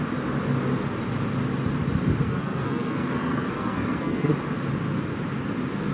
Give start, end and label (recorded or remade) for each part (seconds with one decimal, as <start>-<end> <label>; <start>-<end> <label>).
0.0-2.2 recorded; 2.2-4.3 remade; 4.3-5.9 recorded